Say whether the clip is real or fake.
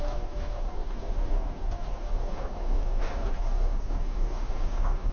fake